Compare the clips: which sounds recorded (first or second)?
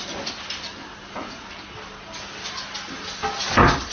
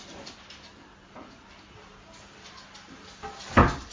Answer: first